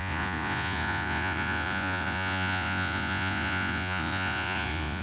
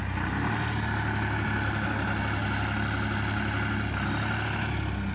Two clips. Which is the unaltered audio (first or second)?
second